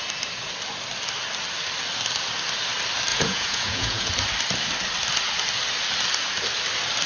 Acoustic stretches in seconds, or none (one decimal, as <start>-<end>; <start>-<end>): 0.0-3.1; 4.1-7.1